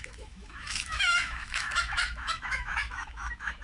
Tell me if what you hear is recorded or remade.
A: remade